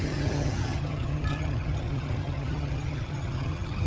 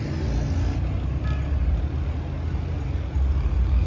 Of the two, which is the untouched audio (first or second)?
second